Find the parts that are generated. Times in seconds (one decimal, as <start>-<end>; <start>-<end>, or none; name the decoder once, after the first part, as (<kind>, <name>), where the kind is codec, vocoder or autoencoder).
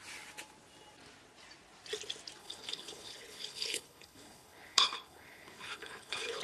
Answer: 2.4-6.4 (codec, HILCodec)